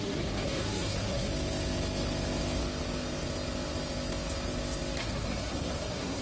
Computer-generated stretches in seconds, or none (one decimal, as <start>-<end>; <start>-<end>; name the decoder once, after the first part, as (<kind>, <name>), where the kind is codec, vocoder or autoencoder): 0.0-1.3 (codec, SNAC); 5.0-6.2